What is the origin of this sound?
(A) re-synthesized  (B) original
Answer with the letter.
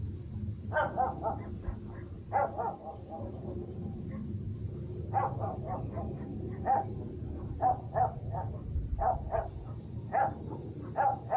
B